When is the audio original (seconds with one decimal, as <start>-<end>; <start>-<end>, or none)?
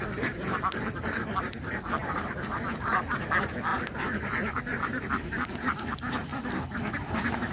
6.3-6.9